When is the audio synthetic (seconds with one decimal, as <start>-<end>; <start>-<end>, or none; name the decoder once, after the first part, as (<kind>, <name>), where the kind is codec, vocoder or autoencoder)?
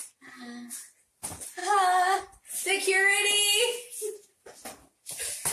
1.6-2.2 (autoencoder, DAC-VAE)